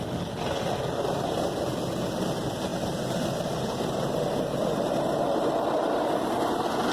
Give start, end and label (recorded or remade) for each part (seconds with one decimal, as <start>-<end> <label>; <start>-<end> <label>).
0.0-6.9 recorded